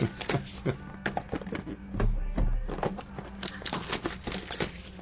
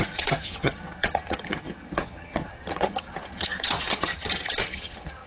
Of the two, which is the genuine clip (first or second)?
first